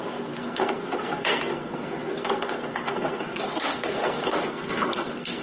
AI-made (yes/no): yes